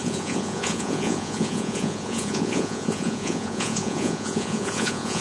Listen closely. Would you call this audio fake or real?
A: fake